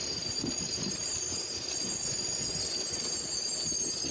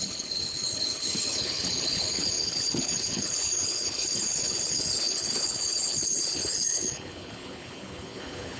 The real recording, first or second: first